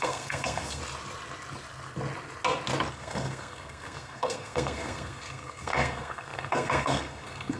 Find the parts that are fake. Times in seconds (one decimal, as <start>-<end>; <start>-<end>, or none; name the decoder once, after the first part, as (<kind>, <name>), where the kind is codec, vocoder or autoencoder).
0.0-0.8 (codec, SNAC); 2.9-7.6